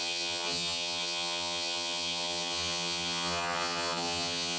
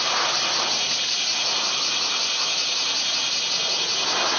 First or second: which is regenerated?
first